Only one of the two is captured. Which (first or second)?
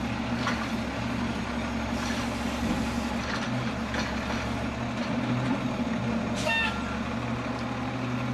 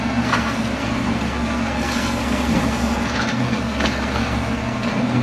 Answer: first